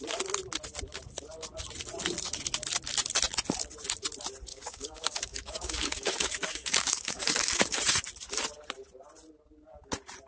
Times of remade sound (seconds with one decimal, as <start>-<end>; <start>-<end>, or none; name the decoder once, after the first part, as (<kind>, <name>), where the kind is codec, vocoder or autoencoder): 4.5-7.8 (codec, DAC)